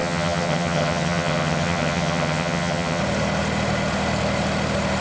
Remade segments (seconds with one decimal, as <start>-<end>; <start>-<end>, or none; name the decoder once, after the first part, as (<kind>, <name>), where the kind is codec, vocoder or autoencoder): 0.0-3.0 (vocoder, HiFi-GAN)